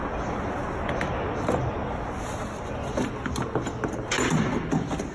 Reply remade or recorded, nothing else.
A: recorded